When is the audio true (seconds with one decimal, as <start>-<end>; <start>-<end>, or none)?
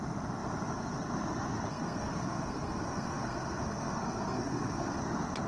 0.0-1.7; 5.0-5.5